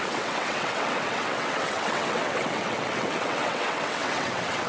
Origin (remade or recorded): remade